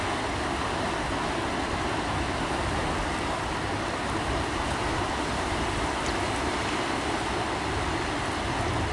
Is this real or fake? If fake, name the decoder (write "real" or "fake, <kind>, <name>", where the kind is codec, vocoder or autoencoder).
real